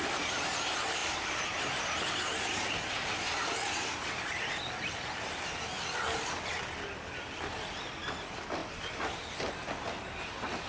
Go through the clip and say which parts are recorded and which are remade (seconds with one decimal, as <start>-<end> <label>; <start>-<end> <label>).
0.0-10.7 recorded